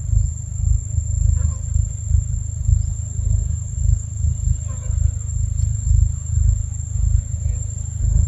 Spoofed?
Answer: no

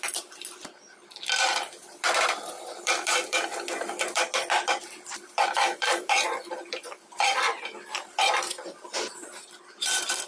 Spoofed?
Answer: yes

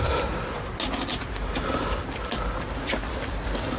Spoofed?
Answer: no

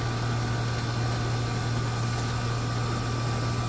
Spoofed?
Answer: no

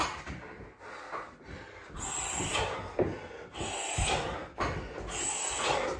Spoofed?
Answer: no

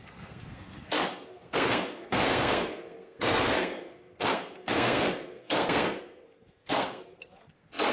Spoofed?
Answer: yes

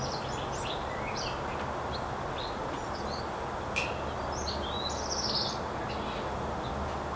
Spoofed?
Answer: no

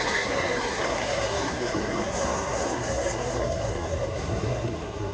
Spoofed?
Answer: yes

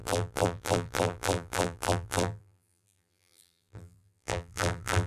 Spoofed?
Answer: yes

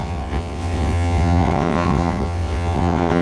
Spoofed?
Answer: yes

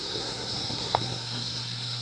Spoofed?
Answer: yes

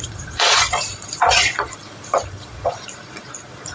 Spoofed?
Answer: yes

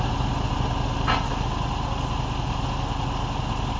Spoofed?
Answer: no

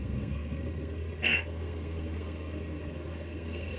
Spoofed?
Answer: yes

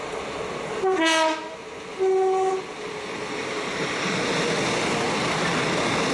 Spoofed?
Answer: no